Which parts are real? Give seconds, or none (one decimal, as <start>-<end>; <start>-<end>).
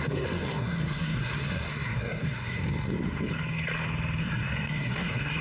2.6-4.2